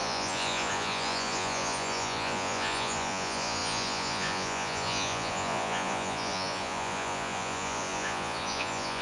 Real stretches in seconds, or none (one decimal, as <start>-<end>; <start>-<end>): none